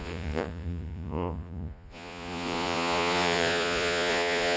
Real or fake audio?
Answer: fake